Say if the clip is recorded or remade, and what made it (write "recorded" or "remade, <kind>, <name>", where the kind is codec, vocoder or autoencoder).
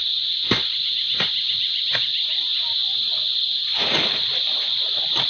recorded